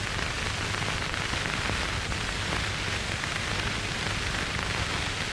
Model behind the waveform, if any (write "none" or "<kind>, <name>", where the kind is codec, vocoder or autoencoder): none